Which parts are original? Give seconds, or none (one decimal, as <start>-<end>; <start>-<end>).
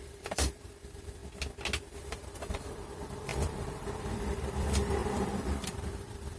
1.2-2.0